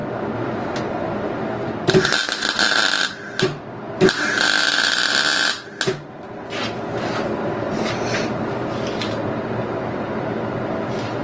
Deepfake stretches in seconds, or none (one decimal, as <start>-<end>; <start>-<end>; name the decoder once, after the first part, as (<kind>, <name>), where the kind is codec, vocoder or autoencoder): none